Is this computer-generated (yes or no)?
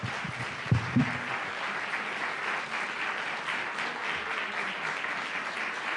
no